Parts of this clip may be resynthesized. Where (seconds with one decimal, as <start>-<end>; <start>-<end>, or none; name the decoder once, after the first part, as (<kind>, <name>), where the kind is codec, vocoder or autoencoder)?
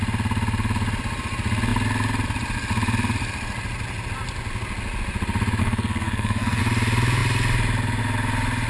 5.6-6.6 (codec, SNAC)